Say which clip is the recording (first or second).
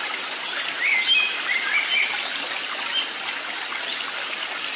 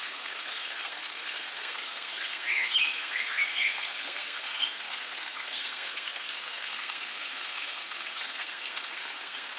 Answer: first